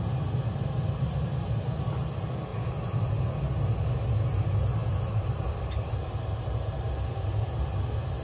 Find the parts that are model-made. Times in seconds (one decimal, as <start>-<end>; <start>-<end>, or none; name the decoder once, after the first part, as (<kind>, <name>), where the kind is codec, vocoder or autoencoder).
2.5-3.1 (vocoder, BigVGAN v2); 4.8-6.1